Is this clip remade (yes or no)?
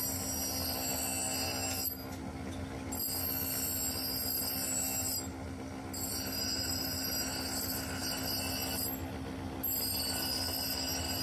no